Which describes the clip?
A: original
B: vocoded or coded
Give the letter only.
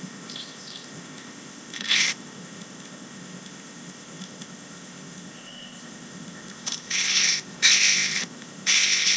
B